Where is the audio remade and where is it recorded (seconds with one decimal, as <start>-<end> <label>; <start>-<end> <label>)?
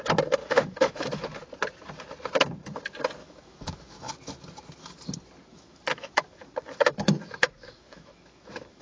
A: 0.0-0.4 recorded; 0.4-1.2 remade; 1.2-3.2 recorded; 3.2-4.1 remade; 4.1-5.5 recorded; 5.5-8.8 remade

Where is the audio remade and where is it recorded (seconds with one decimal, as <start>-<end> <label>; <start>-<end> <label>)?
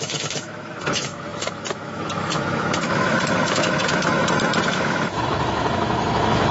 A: 0.0-6.5 remade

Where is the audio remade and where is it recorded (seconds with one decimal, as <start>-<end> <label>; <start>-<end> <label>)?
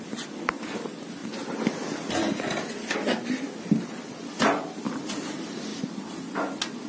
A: 0.0-6.9 recorded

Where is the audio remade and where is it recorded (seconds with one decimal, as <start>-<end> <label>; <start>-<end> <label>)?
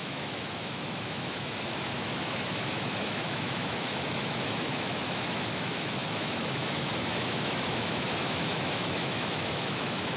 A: 0.0-10.2 remade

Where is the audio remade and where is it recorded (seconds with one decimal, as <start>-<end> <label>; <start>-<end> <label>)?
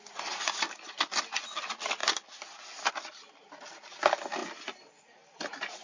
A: 0.0-5.8 recorded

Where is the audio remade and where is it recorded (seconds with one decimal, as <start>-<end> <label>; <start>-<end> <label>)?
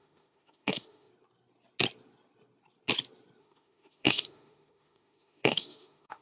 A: 0.0-1.1 remade; 1.1-3.4 recorded; 3.4-6.2 remade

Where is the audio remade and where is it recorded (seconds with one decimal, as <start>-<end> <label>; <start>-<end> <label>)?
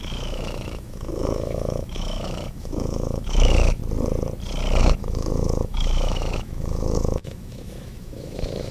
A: 0.0-3.8 remade; 3.8-4.8 recorded; 4.8-8.7 remade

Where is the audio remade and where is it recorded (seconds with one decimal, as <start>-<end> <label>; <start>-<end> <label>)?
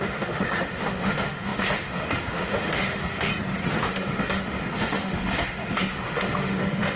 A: 0.0-3.3 remade; 3.3-3.8 recorded; 3.8-7.0 remade